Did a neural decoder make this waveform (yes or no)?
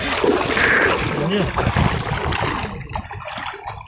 no